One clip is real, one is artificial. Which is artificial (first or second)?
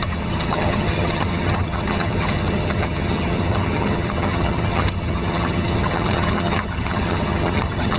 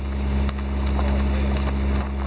first